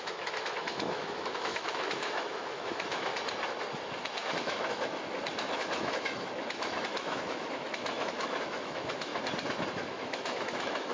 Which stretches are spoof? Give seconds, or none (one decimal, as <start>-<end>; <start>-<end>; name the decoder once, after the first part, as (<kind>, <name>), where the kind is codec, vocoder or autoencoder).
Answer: 0.0-3.1 (autoencoder, DAC-VAE); 4.2-9.1; 9.7-10.9